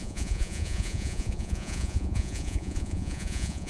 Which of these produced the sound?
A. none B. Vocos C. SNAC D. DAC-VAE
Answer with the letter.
B